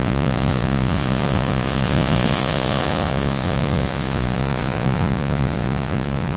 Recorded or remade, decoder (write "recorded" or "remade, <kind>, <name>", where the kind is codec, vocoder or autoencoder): remade, vocoder, Vocos